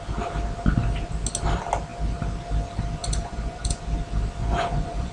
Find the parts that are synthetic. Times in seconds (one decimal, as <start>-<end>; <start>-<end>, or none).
3.0-3.8; 4.4-5.1

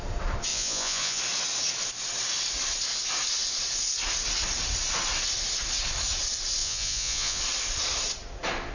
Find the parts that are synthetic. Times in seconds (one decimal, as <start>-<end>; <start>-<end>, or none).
0.5-1.2; 6.6-7.4